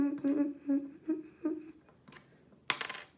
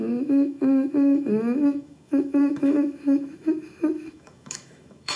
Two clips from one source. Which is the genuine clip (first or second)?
first